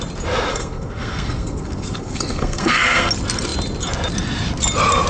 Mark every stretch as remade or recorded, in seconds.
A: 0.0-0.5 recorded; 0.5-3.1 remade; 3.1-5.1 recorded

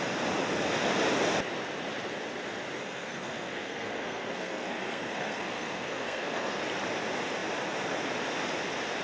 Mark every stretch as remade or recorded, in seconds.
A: 0.0-2.8 recorded; 2.8-6.6 remade; 6.6-9.0 recorded

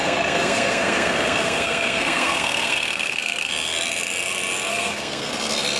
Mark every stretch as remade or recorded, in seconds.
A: 0.0-3.5 remade; 3.5-4.7 recorded; 4.7-5.3 remade; 5.3-5.8 recorded

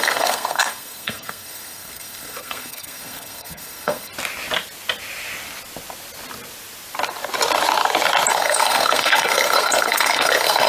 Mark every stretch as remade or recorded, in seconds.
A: 0.0-4.1 remade; 4.1-8.3 recorded; 8.3-10.7 remade

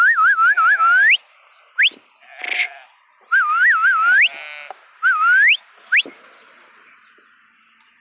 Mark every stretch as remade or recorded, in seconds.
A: 0.0-8.0 recorded